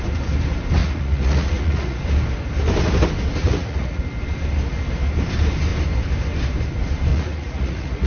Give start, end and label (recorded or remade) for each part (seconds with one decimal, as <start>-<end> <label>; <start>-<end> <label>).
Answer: 0.0-0.8 recorded; 0.8-2.0 remade; 2.0-3.4 recorded; 3.4-4.0 remade; 4.0-7.1 recorded; 7.1-8.1 remade